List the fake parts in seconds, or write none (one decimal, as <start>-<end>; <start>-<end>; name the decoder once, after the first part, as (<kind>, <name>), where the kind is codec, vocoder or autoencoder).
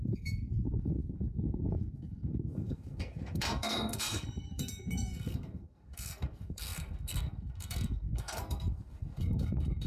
0.0-9.9 (codec, SNAC)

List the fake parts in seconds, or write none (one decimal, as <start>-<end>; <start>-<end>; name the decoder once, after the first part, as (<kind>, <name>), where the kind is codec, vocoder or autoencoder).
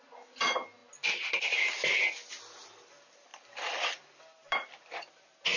3.3-4.8 (vocoder, BigVGAN v2)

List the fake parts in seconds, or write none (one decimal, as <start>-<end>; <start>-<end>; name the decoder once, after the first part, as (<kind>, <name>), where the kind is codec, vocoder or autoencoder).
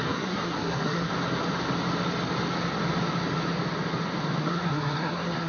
0.0-1.1 (codec, SNAC); 4.4-5.5